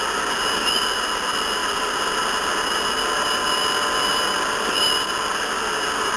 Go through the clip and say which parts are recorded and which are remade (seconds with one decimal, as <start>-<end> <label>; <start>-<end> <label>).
0.0-6.2 recorded